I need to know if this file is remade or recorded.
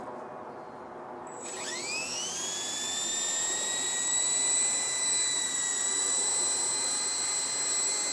recorded